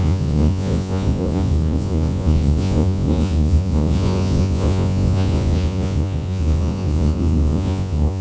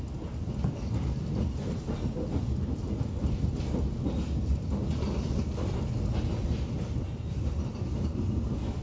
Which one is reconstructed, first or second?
first